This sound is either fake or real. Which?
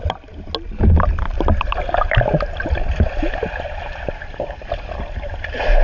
real